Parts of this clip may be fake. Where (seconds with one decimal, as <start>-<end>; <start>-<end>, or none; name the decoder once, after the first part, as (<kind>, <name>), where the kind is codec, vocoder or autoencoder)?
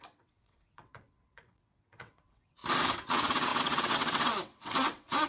0.0-2.6 (vocoder, WaveNeXt); 3.1-5.3